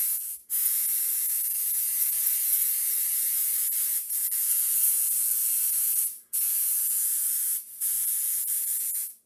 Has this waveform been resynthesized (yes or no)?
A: yes